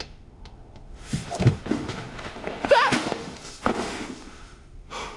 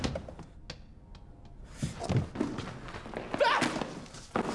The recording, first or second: second